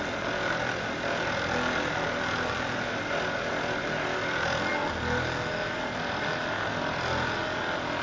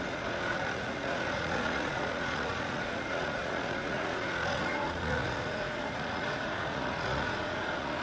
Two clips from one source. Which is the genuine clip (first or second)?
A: first